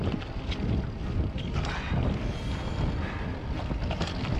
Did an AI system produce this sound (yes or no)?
no